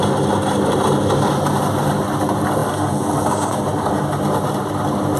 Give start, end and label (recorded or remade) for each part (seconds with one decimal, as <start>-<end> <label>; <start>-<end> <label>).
0.0-5.2 recorded